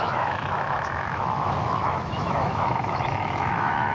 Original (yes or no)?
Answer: no